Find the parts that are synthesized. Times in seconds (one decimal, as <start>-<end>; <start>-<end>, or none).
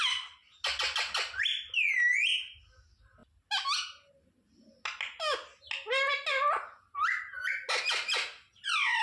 none